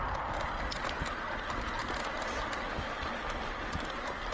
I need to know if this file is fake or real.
real